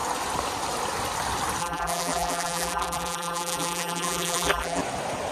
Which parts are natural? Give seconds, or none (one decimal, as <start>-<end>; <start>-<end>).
0.0-1.6; 4.8-5.3

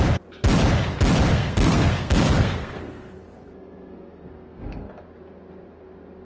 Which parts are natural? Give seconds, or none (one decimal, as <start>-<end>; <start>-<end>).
0.0-1.3; 5.0-6.2

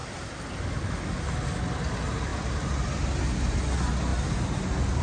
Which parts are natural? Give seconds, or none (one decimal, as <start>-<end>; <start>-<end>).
0.0-5.0

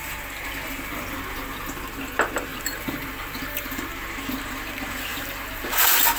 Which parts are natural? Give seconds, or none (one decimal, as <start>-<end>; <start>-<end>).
0.0-2.5; 3.8-5.1

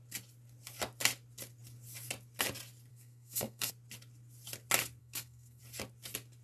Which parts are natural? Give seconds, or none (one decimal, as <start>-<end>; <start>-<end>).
0.0-2.9; 3.7-5.0; 5.6-6.4

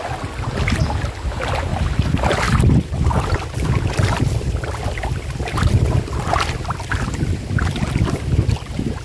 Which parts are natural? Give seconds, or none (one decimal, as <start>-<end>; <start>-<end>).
0.0-1.7; 6.3-9.0

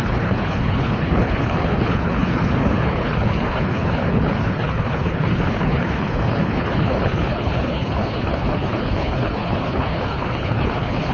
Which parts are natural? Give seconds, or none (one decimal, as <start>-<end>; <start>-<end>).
none

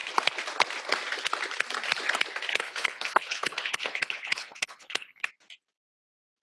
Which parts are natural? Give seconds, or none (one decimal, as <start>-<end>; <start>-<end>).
0.0-2.5; 5.3-6.4